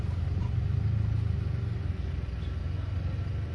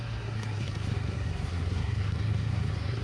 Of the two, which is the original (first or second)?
first